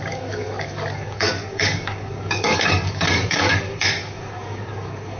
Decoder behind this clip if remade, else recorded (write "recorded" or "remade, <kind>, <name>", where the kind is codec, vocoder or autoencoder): remade, codec, DAC